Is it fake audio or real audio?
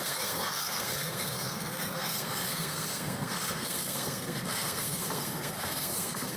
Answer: fake